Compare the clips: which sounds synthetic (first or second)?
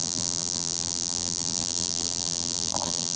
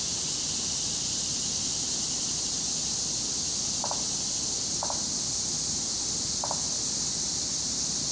first